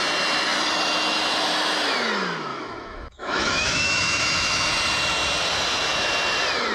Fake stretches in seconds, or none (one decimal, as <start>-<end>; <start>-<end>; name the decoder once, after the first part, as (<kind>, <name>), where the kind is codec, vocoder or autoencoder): 2.5-4.7 (autoencoder, DAC-VAE)